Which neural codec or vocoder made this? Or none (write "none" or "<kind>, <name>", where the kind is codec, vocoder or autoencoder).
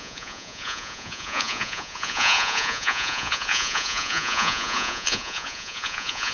vocoder, Vocos